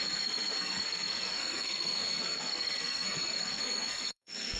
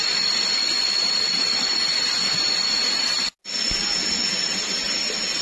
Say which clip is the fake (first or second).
first